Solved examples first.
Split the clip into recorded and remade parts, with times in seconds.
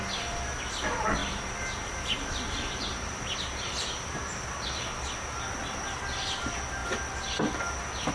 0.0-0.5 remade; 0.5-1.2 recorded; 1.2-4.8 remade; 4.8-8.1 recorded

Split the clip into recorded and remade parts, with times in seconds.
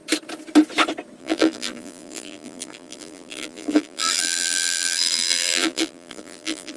0.0-1.2 recorded; 1.2-6.8 remade